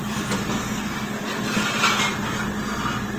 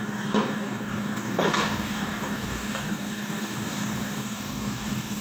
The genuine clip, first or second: first